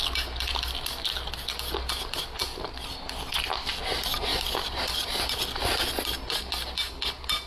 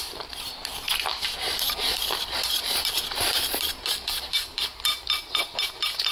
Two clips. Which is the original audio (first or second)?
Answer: first